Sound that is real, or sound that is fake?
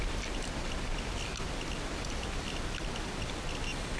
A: real